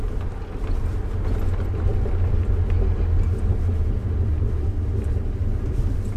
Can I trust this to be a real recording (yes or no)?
yes